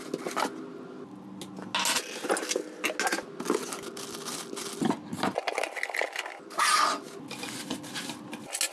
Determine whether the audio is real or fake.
real